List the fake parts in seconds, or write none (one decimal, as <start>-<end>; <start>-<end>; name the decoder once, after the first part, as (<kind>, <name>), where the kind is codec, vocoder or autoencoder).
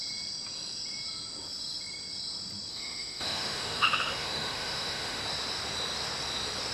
2.7-5.2 (autoencoder, DAC-VAE)